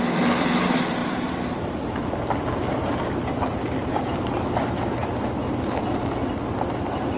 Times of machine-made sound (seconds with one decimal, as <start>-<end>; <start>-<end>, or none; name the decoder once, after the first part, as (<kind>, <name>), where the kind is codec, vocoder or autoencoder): none